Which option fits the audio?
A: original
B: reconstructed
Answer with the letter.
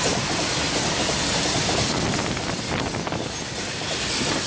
A